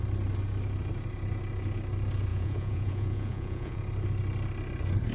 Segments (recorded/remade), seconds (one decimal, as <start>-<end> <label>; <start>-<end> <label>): 0.0-2.3 recorded; 2.3-3.8 remade; 3.8-5.1 recorded